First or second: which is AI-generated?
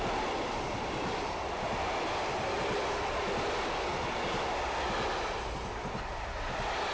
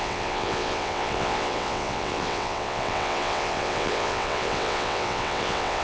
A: second